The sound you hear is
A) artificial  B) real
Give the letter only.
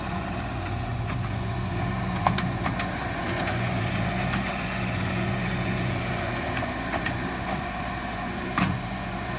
A